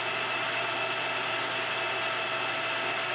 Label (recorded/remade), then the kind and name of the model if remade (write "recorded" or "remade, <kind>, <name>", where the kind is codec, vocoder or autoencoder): recorded